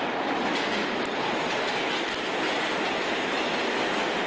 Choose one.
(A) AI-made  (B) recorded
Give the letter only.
B